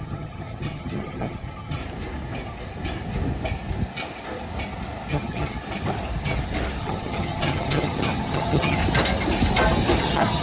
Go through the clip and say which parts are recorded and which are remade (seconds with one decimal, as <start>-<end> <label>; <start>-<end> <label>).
0.0-1.8 remade; 1.8-5.1 recorded; 5.1-5.6 remade; 5.6-6.8 recorded; 6.8-8.8 remade; 8.8-10.0 recorded; 10.0-10.4 remade